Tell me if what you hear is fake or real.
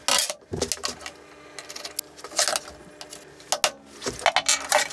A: real